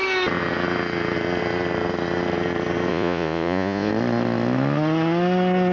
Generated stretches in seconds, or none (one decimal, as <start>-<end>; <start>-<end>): 2.9-3.9